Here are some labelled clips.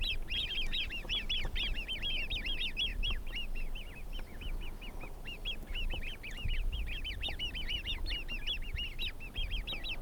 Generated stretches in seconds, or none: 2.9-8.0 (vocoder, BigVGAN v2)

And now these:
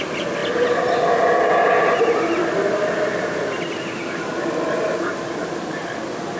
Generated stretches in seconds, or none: 0.0-0.4 (vocoder, BigVGAN v2); 4.2-6.4

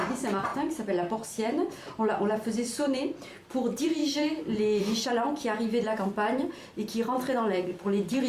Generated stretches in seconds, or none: 0.0-8.3 (vocoder, BigVGAN v2)

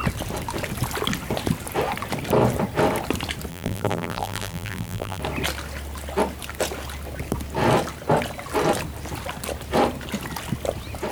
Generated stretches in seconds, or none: 3.5-5.2 (vocoder, BigVGAN v2)

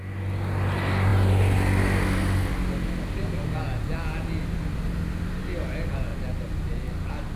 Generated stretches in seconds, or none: none